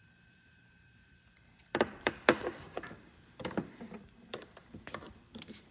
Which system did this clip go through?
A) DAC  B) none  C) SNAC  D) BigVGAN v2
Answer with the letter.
D